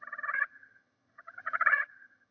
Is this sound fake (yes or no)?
yes